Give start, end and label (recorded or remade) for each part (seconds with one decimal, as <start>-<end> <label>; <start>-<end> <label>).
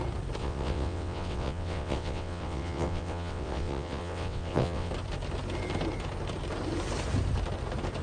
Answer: 0.0-0.4 recorded; 0.4-4.9 remade; 4.9-8.0 recorded